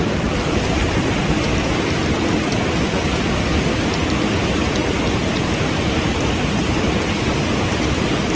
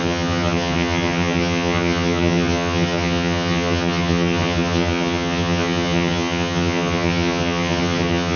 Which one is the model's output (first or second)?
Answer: second